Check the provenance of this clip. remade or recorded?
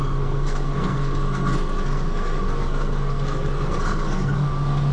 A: remade